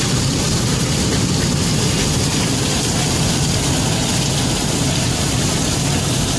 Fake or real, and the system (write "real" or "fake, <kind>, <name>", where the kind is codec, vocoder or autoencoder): real